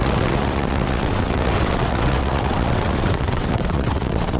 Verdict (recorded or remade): remade